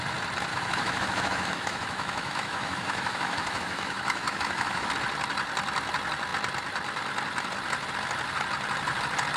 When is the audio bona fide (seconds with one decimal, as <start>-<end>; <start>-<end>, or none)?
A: 0.0-0.5; 4.9-9.4